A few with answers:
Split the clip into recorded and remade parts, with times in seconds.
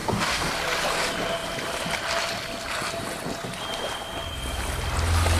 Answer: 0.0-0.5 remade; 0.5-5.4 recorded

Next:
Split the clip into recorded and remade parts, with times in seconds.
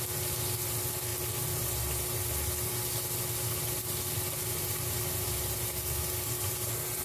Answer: 0.0-7.0 recorded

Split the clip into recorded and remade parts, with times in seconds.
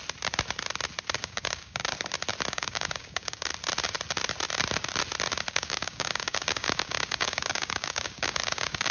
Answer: 0.0-1.2 recorded; 1.2-1.8 remade; 1.8-2.5 recorded; 2.5-3.5 remade; 3.5-5.5 recorded; 5.5-8.9 remade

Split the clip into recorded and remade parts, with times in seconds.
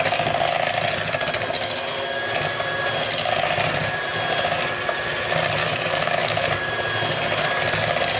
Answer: 0.0-5.6 recorded; 5.6-6.7 remade; 6.7-8.2 recorded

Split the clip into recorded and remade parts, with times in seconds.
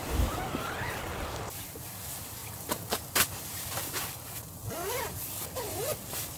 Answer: 0.0-6.4 recorded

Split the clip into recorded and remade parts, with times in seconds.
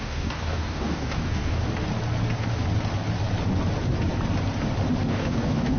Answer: 0.0-1.6 remade; 1.6-5.1 recorded; 5.1-5.8 remade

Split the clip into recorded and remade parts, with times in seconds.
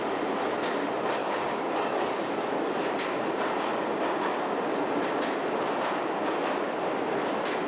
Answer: 0.0-1.2 recorded; 1.2-2.9 remade; 2.9-7.7 recorded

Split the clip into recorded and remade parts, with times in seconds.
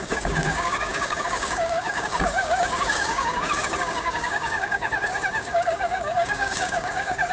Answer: 0.0-7.3 remade